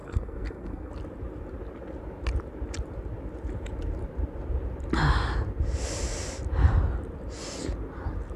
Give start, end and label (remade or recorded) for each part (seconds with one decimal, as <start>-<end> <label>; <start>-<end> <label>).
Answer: 0.0-0.9 remade; 0.9-8.4 recorded